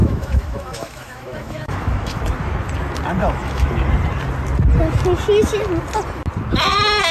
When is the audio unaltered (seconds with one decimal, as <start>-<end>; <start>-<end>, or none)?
2.2-3.2; 3.7-7.1